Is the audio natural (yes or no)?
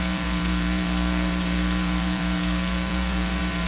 no